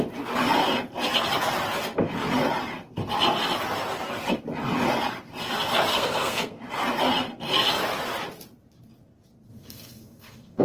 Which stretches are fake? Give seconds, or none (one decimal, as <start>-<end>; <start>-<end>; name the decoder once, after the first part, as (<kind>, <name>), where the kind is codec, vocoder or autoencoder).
5.9-6.6 (codec, SNAC); 9.5-10.6